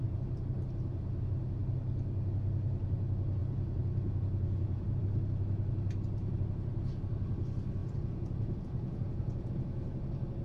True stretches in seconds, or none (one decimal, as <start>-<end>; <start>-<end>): 0.0-3.4; 5.0-7.8; 9.5-10.4